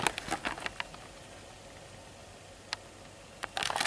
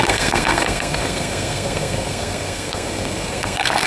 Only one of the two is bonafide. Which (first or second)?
first